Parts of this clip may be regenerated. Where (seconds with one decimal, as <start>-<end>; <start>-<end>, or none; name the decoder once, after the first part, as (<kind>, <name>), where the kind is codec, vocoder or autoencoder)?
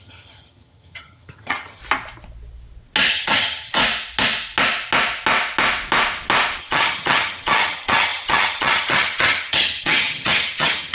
0.0-1.8 (vocoder, HiFi-GAN); 3.1-3.8; 6.6-10.9